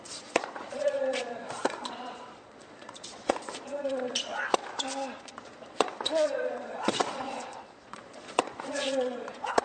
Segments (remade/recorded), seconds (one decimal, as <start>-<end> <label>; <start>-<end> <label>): 0.0-4.6 remade; 4.6-5.2 recorded; 5.2-9.6 remade